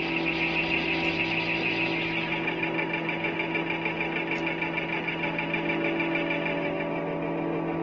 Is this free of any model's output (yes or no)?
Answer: yes